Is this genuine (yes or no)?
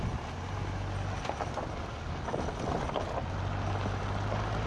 yes